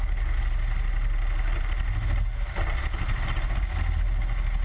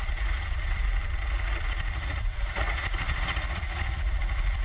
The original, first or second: first